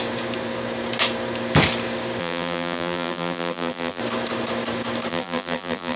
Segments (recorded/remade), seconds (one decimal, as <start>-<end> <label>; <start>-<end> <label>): 0.0-2.2 recorded; 2.2-4.0 remade; 4.0-5.1 recorded; 5.1-6.0 remade